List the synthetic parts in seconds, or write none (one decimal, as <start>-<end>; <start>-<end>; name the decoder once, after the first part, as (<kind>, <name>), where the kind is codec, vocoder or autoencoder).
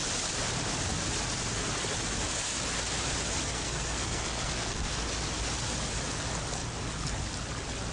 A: 3.4-4.9 (codec, SNAC)